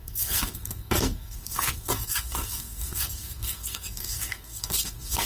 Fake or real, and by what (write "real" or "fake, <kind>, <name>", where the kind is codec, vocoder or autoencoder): fake, codec, SNAC